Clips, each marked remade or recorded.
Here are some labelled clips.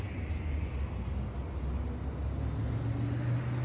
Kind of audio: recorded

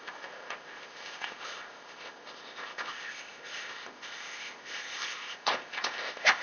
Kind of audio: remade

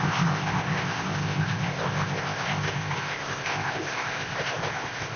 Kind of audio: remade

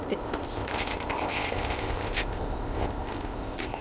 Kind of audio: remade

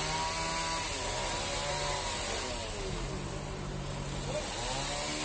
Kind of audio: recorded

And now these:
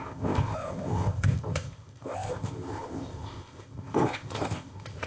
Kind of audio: remade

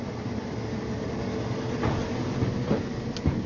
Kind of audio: recorded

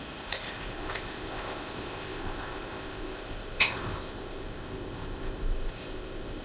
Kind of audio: remade